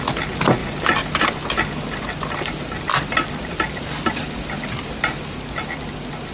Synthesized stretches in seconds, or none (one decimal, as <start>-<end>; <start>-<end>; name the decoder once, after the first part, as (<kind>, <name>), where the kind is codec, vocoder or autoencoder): 2.9-4.4 (vocoder, BigVGAN v2)